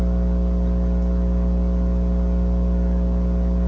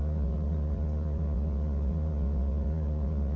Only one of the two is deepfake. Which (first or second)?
second